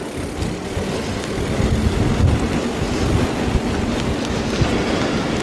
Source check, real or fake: real